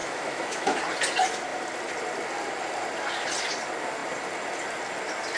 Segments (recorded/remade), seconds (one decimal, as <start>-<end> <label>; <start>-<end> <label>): 0.0-0.8 remade; 0.8-5.4 recorded